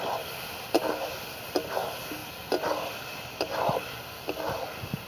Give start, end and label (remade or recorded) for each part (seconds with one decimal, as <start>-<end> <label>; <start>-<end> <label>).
0.0-5.1 recorded